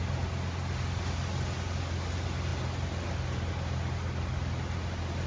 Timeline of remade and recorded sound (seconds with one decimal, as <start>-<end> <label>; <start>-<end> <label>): 0.0-5.3 recorded